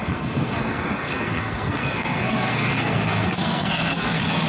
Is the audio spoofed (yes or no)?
yes